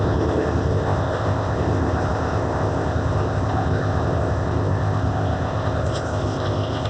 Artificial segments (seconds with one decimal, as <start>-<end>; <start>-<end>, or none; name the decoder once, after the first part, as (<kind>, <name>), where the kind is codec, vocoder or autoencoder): 0.0-6.9 (codec, ZipCodec)

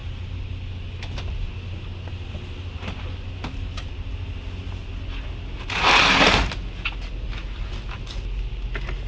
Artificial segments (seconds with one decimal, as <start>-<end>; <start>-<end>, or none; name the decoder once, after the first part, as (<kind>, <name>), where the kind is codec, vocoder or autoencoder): none

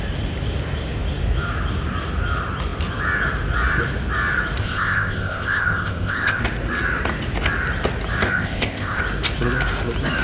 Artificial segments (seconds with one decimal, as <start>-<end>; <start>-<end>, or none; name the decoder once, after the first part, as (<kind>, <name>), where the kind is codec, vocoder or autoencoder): 4.6-6.4 (codec, ZipCodec); 8.2-9.0

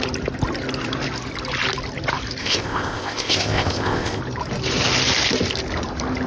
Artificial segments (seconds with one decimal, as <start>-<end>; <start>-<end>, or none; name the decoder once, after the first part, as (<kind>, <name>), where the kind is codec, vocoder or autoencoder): 2.4-4.2 (codec, ZipCodec)

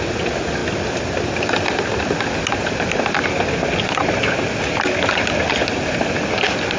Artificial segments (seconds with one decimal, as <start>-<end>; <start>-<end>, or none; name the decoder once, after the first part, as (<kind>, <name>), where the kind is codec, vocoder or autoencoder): none

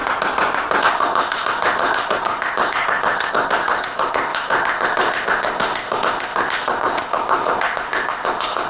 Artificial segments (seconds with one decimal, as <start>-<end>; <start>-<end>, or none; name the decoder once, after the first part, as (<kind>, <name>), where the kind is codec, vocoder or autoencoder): 0.8-8.7 (codec, ZipCodec)

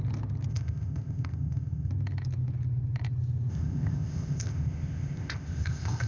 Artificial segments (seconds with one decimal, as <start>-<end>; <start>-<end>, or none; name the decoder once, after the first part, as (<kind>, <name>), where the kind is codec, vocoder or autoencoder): 0.5-1.9 (codec, ZipCodec); 3.5-6.1